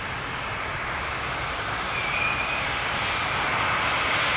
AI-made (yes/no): no